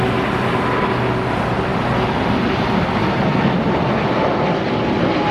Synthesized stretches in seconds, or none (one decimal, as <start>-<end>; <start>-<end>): none